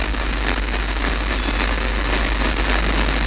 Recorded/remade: recorded